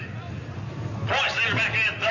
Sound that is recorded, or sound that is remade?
recorded